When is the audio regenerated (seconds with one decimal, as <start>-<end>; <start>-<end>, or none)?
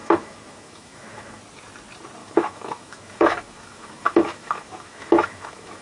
0.0-1.4; 2.2-5.8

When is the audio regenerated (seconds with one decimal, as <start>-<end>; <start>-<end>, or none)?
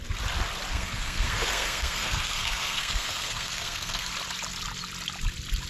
0.7-4.1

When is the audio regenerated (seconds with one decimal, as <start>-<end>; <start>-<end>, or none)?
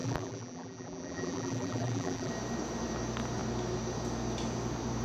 0.0-2.3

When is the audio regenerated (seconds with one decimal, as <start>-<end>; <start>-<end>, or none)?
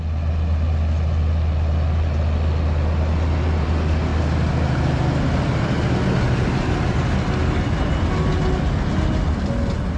none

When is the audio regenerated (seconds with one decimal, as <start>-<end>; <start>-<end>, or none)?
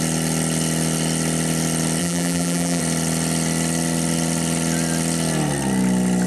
2.0-2.8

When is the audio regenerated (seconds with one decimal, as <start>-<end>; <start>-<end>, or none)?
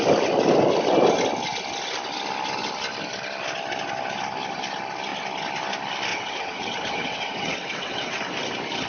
6.1-8.2